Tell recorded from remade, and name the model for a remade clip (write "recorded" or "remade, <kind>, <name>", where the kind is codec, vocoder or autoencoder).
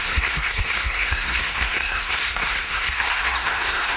remade, codec, SNAC